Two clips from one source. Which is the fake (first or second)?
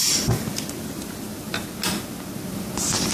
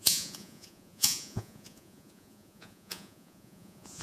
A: second